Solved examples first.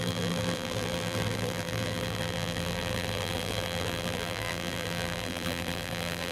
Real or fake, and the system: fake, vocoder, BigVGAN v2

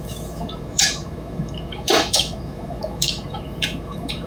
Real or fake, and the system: fake, autoencoder, DAC-VAE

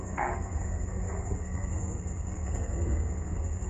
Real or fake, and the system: fake, codec, SNAC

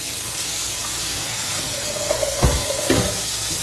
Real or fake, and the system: fake, codec, SNAC